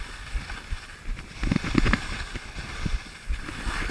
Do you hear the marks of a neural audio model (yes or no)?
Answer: no